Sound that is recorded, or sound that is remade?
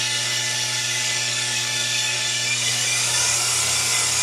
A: remade